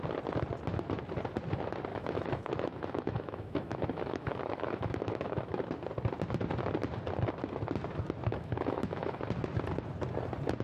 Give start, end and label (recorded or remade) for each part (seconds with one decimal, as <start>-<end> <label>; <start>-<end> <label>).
0.0-1.9 recorded; 1.9-5.6 remade; 5.6-8.3 recorded; 8.3-9.2 remade; 9.2-10.6 recorded